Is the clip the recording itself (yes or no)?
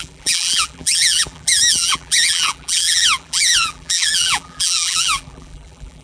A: no